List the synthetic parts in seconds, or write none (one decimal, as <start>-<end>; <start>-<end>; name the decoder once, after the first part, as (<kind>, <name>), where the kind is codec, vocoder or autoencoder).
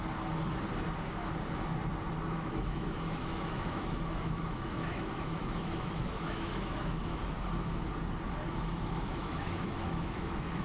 2.4-7.2 (autoencoder, DAC-VAE); 8.5-10.6